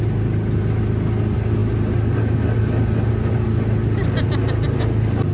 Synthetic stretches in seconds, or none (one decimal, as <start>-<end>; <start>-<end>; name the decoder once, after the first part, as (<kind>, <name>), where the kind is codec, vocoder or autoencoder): none